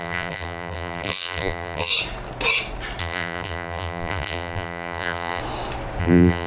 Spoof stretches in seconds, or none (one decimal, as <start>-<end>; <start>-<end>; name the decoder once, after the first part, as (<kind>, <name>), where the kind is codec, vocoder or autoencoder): 0.0-1.9 (vocoder, BigVGAN v2); 3.0-5.4; 6.0-6.5